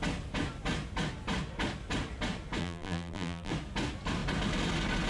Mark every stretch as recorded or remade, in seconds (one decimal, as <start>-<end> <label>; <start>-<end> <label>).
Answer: 0.0-2.6 recorded; 2.6-3.5 remade; 3.5-5.1 recorded